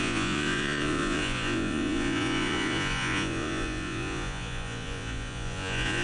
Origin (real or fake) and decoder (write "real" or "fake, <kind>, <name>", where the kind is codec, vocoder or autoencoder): fake, vocoder, Vocos